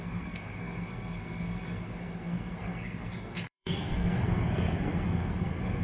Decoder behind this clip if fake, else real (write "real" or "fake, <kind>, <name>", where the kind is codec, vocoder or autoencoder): fake, codec, SNAC